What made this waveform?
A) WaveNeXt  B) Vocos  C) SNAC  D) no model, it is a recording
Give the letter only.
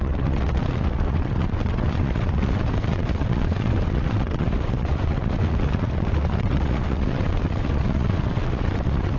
A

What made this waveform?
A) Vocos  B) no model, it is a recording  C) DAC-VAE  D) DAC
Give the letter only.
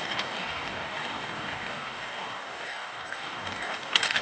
D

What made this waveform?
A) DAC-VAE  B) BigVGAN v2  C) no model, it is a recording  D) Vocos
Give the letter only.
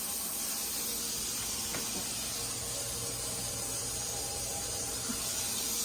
C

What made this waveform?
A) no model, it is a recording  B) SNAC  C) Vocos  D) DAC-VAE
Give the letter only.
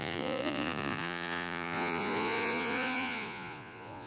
C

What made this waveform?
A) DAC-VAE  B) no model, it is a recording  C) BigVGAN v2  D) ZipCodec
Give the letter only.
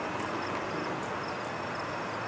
B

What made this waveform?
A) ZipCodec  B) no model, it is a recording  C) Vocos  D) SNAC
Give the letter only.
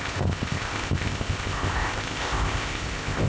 A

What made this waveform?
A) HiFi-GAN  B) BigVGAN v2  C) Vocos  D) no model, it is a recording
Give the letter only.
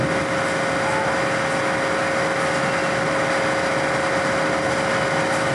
D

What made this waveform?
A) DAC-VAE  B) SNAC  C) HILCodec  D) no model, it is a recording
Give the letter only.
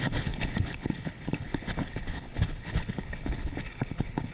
C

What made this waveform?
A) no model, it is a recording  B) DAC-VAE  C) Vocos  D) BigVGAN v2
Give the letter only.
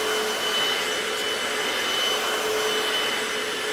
A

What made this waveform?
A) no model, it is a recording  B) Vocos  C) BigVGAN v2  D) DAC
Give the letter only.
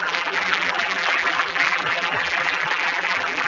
C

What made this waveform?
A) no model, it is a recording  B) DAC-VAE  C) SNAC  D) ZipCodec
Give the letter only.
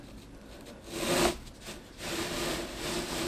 A